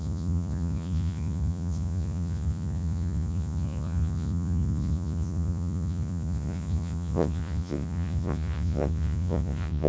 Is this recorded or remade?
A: remade